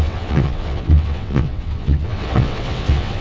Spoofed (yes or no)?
yes